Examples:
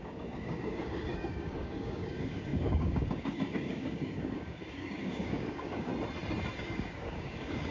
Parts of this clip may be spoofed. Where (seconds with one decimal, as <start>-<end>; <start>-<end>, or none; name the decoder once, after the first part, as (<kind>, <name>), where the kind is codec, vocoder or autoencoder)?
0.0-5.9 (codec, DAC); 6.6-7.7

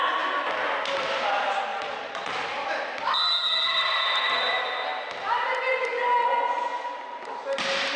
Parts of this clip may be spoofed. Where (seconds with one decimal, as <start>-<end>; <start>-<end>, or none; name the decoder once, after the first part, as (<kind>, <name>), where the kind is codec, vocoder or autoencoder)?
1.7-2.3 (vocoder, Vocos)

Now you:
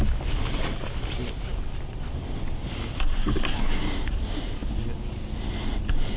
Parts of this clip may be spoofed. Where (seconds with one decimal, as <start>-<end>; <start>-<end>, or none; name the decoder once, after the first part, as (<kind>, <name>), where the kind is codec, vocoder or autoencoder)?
none

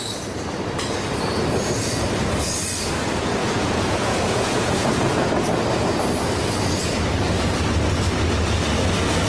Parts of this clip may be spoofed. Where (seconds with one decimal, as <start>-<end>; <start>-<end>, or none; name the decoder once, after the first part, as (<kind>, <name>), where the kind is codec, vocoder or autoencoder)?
3.4-5.3 (vocoder, Vocos)

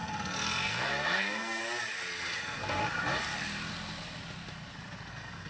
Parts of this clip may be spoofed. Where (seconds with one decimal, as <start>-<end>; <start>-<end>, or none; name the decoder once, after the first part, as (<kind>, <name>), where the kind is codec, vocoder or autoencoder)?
0.0-1.6 (codec, SNAC); 2.4-2.8; 5.1-5.5